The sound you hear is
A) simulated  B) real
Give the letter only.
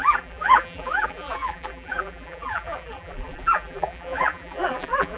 A